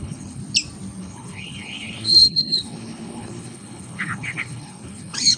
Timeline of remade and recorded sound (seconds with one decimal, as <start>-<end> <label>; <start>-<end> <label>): 0.0-0.4 remade; 0.4-1.0 recorded; 1.0-5.4 remade